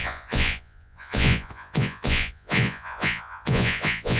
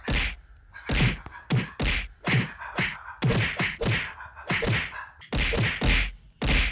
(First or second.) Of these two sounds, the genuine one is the second